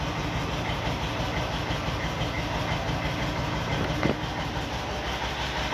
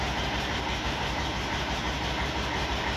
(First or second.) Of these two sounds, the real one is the first